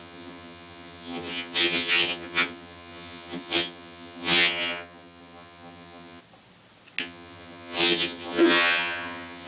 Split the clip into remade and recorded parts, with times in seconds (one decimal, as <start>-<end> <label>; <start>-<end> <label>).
0.0-6.2 remade; 6.2-7.0 recorded; 7.0-9.5 remade